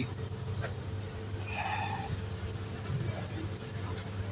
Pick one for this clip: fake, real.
real